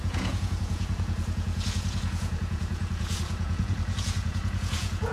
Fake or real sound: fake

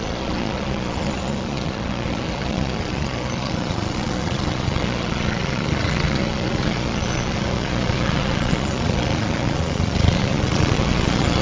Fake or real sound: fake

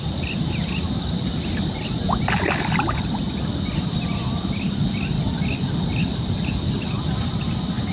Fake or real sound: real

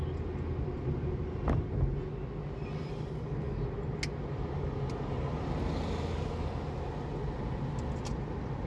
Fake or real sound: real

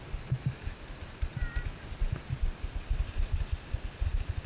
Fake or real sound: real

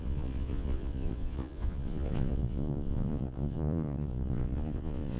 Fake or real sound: fake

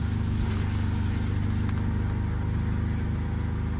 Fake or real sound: real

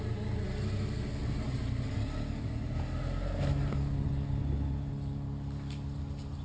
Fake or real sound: real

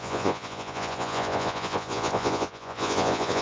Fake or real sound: fake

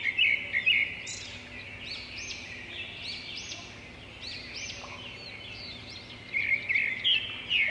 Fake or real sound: real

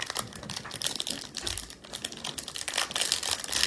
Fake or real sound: real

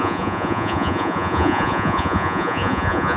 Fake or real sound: fake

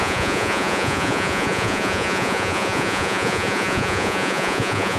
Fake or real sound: fake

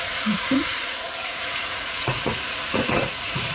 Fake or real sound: fake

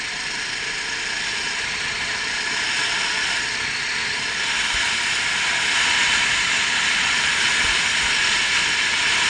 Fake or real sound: real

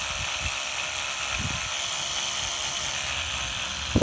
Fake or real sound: real